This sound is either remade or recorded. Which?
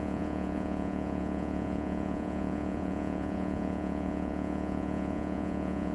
remade